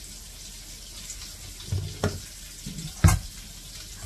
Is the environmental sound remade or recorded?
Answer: recorded